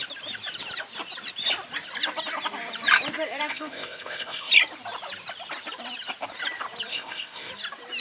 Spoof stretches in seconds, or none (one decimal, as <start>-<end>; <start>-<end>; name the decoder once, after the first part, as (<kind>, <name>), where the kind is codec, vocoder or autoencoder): 3.5-4.5 (codec, ZipCodec); 6.9-7.5